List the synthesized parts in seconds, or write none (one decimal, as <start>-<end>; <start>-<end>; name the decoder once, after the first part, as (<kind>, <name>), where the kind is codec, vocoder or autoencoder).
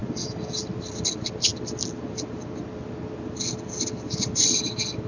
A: none